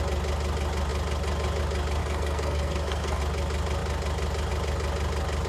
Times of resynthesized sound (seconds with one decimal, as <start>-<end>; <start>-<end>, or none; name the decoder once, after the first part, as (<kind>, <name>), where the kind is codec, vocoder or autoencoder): 2.0-3.2 (codec, SNAC)